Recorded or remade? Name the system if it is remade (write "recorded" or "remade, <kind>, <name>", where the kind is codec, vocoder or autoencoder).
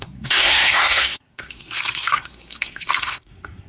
remade, codec, SNAC